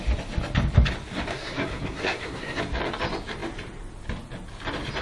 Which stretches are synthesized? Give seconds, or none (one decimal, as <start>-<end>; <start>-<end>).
1.3-2.6